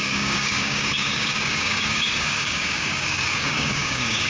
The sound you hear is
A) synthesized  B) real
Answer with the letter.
A